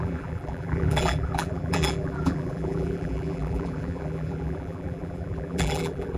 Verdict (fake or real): fake